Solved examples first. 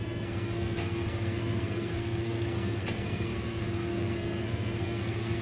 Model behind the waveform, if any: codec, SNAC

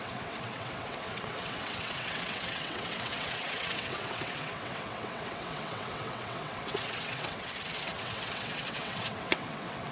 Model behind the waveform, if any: vocoder, WaveNeXt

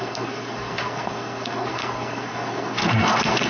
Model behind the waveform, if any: codec, SNAC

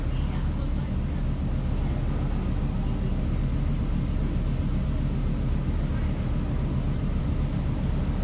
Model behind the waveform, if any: none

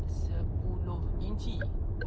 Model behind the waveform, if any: none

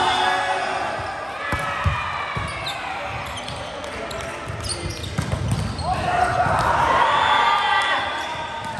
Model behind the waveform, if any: none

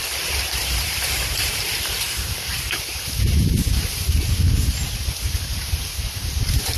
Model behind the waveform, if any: vocoder, BigVGAN v2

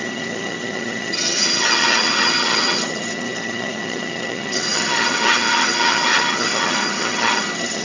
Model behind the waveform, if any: vocoder, HiFi-GAN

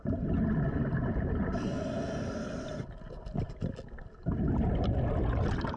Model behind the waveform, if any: none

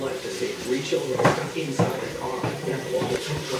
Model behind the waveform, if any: none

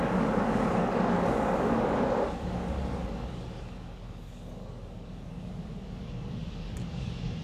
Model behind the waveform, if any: codec, DAC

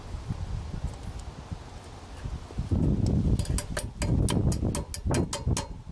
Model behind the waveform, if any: none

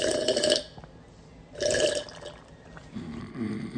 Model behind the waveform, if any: none